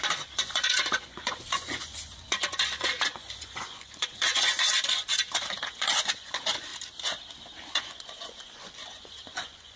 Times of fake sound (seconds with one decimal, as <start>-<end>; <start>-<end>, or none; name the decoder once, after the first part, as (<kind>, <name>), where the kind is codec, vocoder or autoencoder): 0.0-6.7 (vocoder, Vocos); 7.7-9.8